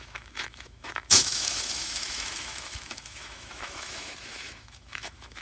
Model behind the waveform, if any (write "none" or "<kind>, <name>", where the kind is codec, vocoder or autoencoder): autoencoder, DAC-VAE